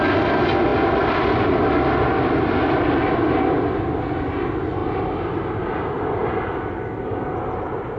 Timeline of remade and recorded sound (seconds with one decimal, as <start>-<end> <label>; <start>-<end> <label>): 0.0-0.7 recorded; 0.7-4.0 remade; 4.0-8.0 recorded